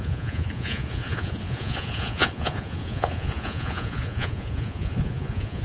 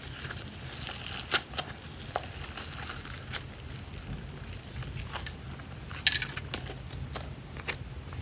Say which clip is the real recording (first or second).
second